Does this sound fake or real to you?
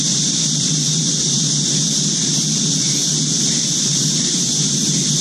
real